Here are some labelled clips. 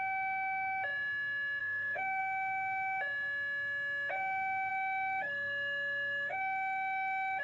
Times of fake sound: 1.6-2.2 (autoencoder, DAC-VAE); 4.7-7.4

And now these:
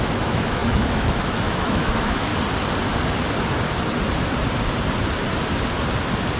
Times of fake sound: 0.0-2.3 (autoencoder, DAC-VAE)

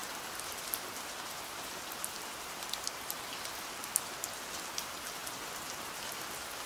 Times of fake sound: none